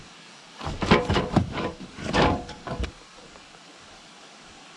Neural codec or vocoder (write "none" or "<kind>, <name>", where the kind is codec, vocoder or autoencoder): codec, DAC